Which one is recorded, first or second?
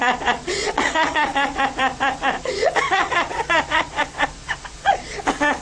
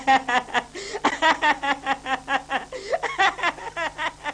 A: second